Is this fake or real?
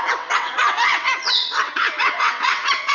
fake